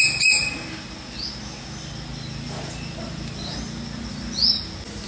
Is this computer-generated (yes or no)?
no